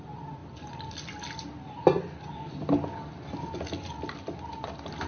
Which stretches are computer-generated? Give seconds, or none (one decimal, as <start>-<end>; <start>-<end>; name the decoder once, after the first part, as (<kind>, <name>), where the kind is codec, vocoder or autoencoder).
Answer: none